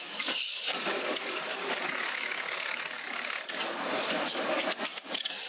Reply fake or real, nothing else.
fake